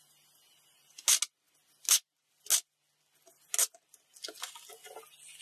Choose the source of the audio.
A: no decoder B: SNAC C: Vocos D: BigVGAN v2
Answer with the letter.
A